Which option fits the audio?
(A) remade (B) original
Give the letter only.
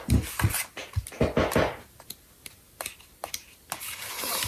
B